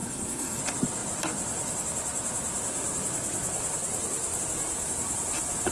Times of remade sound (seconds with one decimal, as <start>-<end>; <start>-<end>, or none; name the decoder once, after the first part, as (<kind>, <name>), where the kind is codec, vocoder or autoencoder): 0.0-0.6 (codec, SNAC)